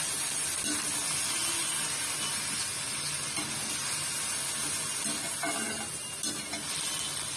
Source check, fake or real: real